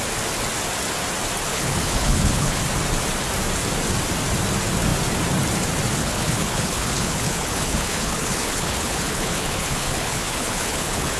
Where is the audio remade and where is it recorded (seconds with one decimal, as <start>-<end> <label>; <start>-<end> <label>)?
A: 0.0-1.5 recorded; 1.5-2.6 remade; 2.6-6.0 recorded; 6.0-11.2 remade